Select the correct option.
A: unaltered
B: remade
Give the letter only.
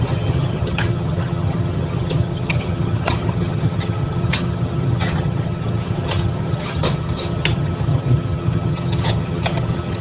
B